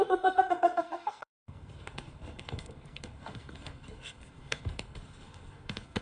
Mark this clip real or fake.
fake